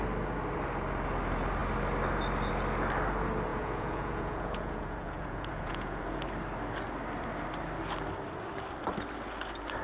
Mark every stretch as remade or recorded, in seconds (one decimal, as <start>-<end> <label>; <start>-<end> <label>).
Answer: 0.0-3.5 recorded; 3.5-6.0 remade; 6.0-9.8 recorded